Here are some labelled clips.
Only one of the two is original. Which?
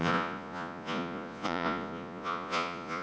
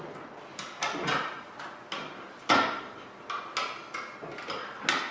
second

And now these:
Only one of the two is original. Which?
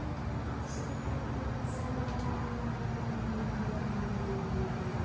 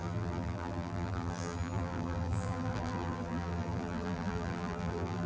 first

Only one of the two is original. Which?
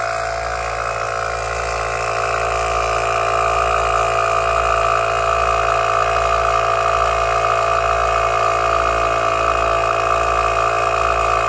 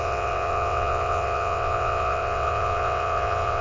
first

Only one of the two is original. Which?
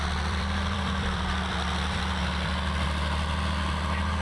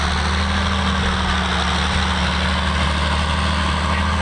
second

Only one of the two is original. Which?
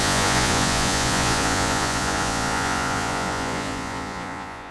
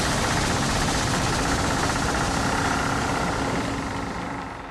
second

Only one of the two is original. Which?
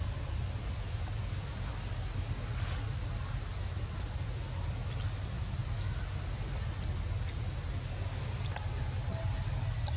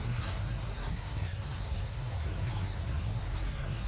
first